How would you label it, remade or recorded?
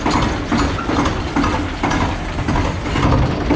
recorded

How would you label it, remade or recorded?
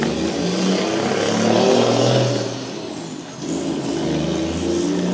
recorded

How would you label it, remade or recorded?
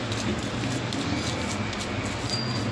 recorded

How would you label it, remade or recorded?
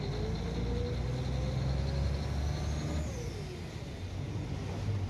recorded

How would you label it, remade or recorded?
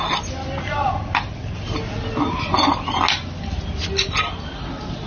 recorded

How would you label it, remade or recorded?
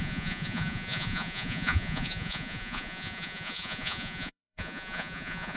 remade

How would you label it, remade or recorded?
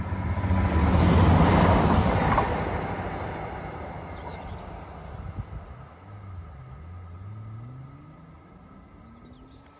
recorded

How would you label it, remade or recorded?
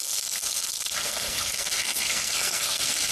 remade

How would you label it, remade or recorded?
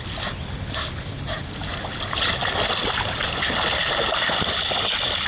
recorded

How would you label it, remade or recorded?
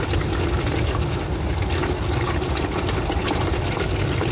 recorded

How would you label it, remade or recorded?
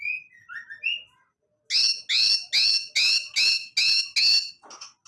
recorded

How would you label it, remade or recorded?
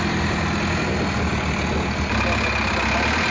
recorded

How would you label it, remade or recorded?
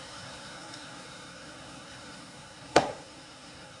remade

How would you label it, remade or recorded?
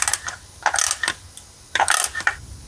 recorded